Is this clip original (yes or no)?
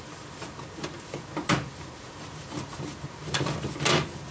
yes